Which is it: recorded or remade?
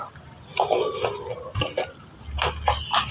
recorded